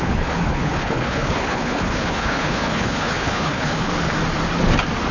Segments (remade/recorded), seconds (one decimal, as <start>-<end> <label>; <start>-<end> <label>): 0.0-3.9 remade; 3.9-5.1 recorded